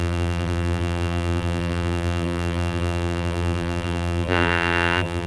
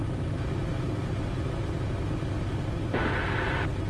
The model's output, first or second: first